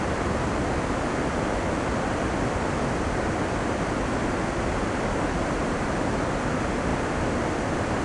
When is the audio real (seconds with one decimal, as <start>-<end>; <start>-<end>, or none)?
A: 0.0-8.0